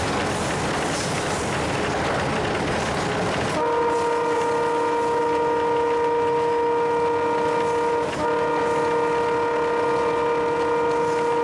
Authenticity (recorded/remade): recorded